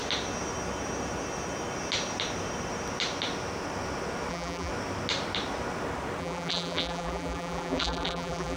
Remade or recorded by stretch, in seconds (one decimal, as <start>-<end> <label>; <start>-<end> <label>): 0.0-4.3 recorded; 4.3-4.7 remade; 4.7-6.2 recorded; 6.2-8.6 remade

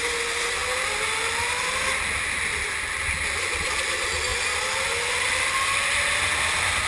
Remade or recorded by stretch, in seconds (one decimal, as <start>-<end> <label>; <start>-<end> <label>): 0.0-6.9 recorded

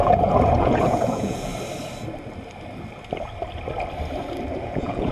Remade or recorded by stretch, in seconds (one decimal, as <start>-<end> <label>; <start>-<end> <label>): 0.0-1.5 remade; 1.5-4.6 recorded; 4.6-5.1 remade

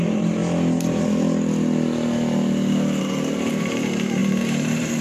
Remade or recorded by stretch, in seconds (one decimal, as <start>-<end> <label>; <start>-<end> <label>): 0.0-0.4 remade; 0.4-3.0 recorded; 3.0-5.0 remade

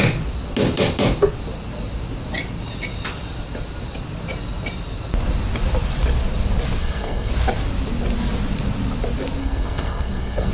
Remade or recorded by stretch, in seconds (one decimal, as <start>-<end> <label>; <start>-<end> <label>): 0.0-6.8 recorded; 6.8-7.3 remade; 7.3-9.4 recorded; 9.4-10.5 remade

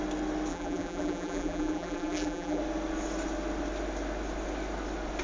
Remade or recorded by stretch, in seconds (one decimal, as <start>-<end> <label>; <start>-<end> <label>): 0.0-0.5 recorded; 0.5-2.6 remade; 2.6-5.2 recorded

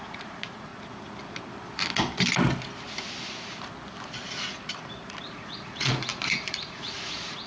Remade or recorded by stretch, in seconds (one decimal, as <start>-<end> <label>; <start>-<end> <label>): 0.0-0.7 remade; 0.7-5.2 recorded; 5.2-7.5 remade